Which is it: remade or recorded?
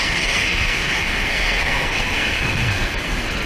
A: remade